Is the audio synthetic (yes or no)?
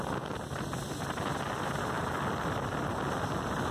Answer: no